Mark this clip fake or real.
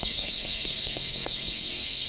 fake